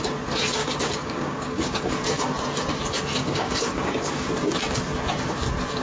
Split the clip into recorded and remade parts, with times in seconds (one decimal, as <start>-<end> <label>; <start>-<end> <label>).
0.0-0.6 recorded; 0.6-1.9 remade; 1.9-3.2 recorded; 3.2-4.3 remade; 4.3-5.8 recorded